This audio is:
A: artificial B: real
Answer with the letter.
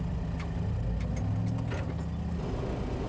B